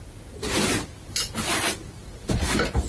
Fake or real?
real